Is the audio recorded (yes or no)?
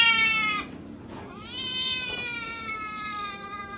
yes